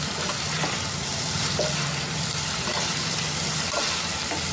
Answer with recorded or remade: remade